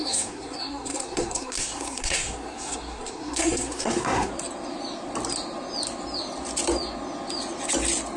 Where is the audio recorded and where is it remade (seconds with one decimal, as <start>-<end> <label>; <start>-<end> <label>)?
0.0-4.3 remade; 4.3-8.2 recorded